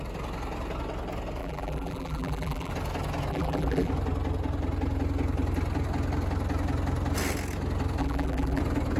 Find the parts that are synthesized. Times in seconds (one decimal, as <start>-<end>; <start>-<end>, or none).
1.4-2.7; 3.3-3.9; 8.0-8.6